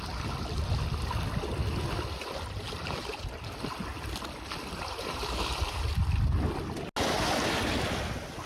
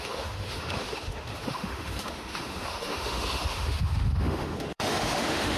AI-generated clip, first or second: second